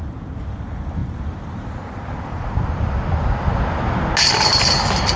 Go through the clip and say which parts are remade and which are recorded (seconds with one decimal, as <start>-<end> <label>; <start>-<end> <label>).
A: 0.0-1.0 recorded; 1.0-4.1 remade; 4.1-5.2 recorded